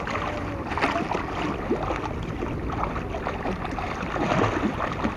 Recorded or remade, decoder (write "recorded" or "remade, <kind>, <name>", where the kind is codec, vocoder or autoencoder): recorded